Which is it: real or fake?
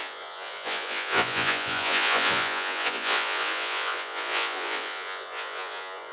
fake